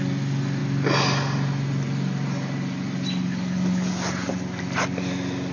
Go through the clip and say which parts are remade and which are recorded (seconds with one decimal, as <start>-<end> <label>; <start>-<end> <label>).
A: 0.0-5.5 recorded